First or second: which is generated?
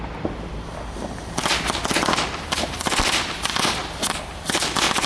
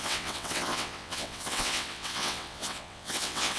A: second